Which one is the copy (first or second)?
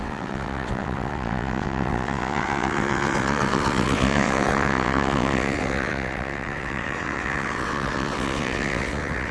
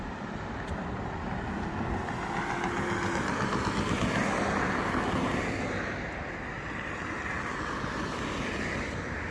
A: first